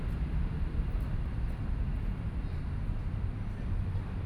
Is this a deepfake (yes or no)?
no